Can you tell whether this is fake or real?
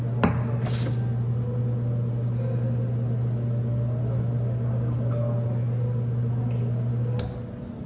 real